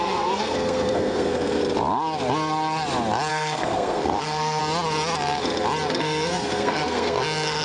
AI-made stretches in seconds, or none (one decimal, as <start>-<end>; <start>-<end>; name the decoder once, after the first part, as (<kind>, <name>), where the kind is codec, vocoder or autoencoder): 0.0-1.6 (codec, SNAC); 3.3-4.6; 5.9-7.6